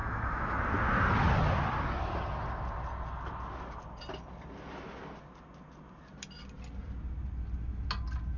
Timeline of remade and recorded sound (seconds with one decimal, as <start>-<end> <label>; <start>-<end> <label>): 0.0-0.6 remade; 0.6-8.4 recorded